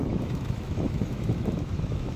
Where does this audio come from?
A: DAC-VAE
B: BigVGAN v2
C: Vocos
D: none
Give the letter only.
A